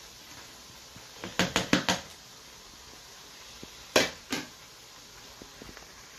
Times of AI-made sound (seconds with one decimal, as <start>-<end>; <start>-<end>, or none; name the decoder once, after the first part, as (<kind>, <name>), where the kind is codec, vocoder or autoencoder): none